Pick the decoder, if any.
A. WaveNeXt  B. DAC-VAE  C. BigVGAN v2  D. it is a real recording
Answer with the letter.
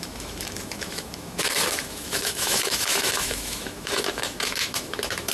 B